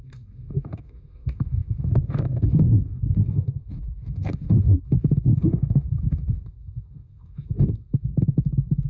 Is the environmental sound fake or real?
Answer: fake